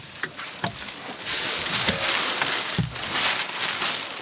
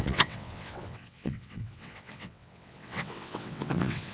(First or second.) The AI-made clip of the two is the second